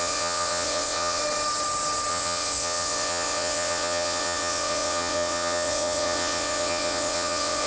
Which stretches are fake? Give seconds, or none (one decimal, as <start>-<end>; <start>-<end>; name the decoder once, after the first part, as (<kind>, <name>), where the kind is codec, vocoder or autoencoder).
0.0-1.2 (vocoder, WaveNeXt); 2.1-7.7